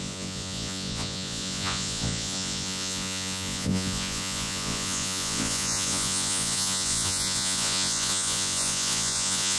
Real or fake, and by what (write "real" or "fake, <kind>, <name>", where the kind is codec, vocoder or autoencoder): fake, vocoder, Vocos